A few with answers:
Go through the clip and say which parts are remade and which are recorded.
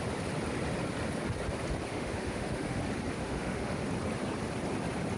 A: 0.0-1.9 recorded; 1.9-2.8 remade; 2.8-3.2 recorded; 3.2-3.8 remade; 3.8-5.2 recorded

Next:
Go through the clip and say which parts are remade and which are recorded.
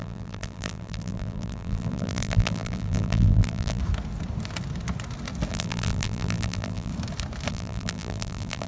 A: 0.0-3.8 remade; 3.8-5.5 recorded; 5.5-6.9 remade; 6.9-7.5 recorded; 7.5-8.7 remade